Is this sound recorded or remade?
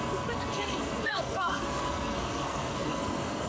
remade